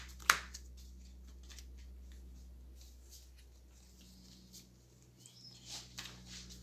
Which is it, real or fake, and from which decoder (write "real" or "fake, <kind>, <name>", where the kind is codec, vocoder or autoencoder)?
real